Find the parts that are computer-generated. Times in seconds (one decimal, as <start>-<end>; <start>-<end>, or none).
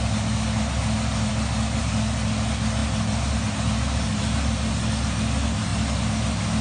none